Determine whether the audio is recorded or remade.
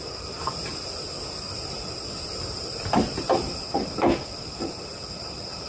recorded